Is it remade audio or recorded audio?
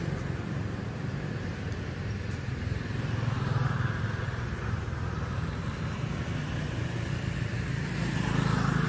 remade